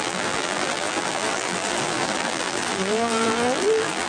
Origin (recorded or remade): remade